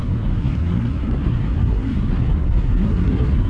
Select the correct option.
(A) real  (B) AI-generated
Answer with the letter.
B